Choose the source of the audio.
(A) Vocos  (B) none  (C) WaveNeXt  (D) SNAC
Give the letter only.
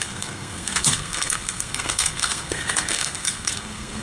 D